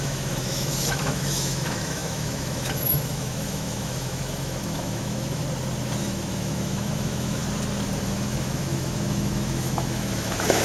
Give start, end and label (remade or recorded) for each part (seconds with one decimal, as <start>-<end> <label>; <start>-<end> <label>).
0.0-5.4 remade; 5.4-6.0 recorded; 6.0-7.4 remade; 7.4-8.0 recorded; 8.0-10.6 remade

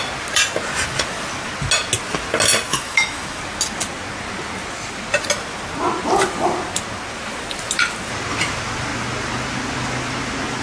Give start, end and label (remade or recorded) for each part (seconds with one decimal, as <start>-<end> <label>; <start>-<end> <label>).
0.0-2.7 recorded; 2.7-3.4 remade; 3.4-10.6 recorded

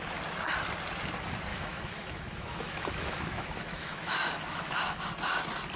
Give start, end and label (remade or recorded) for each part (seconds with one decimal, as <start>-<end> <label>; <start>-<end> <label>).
0.0-1.5 recorded; 1.5-5.0 remade; 5.0-5.8 recorded

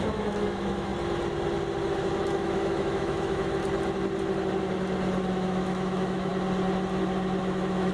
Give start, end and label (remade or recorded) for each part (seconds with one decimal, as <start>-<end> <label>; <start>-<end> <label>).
0.0-0.9 remade; 0.9-2.2 recorded; 2.2-3.6 remade; 3.6-5.3 recorded; 5.3-6.3 remade; 6.3-7.4 recorded; 7.4-7.9 remade

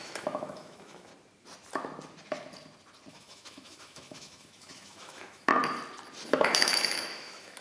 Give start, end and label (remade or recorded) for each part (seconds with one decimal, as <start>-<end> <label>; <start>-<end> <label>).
0.0-1.1 remade; 1.1-3.1 recorded; 3.1-5.5 remade; 5.5-6.3 recorded; 6.3-7.6 remade

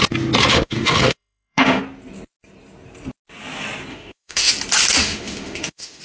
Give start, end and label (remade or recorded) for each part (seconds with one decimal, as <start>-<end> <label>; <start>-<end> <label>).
0.0-0.5 recorded; 0.5-1.8 remade; 1.8-3.9 recorded; 3.9-4.5 remade; 4.5-5.0 recorded; 5.0-6.0 remade